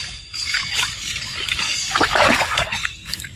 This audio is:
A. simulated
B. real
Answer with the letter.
A